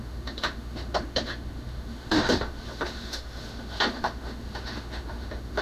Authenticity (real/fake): fake